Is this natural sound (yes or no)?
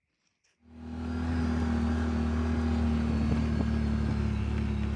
yes